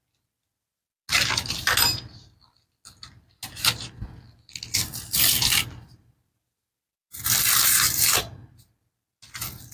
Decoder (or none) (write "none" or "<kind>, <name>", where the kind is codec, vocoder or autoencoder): none